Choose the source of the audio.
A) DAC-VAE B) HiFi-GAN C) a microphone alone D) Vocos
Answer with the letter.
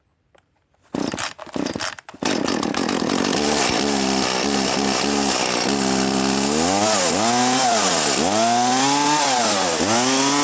C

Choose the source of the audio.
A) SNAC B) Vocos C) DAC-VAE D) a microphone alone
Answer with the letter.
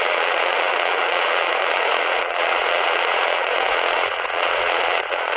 B